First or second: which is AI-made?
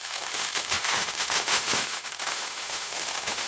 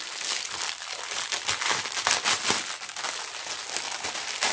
first